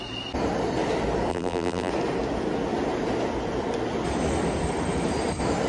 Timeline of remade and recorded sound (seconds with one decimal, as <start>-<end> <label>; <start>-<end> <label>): 0.0-1.3 recorded; 1.3-1.9 remade; 1.9-5.7 recorded

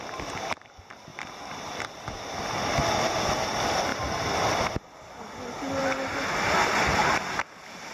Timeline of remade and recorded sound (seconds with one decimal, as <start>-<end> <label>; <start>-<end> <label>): 0.0-3.9 recorded; 3.9-5.2 remade; 5.2-7.9 recorded

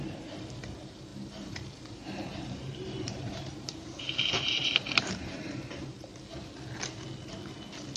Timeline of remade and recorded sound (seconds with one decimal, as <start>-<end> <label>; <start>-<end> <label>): 0.0-6.1 remade; 6.1-8.0 recorded

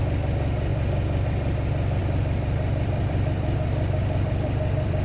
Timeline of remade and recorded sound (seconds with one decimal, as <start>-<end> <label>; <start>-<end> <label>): 0.0-0.7 recorded; 0.7-1.3 remade; 1.3-2.0 recorded; 2.0-5.0 remade

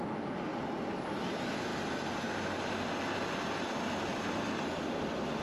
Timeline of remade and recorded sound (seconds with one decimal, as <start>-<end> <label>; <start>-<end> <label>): 0.0-0.5 recorded; 0.5-1.2 remade; 1.2-4.1 recorded; 4.1-5.4 remade